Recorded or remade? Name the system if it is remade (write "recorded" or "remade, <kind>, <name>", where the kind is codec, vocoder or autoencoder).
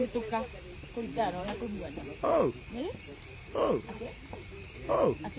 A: remade, vocoder, BigVGAN v2